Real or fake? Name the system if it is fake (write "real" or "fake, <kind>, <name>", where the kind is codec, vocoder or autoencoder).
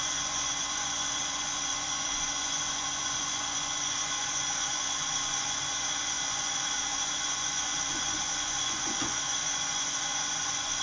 fake, vocoder, Vocos